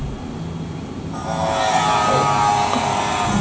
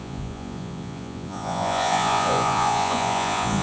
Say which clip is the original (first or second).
first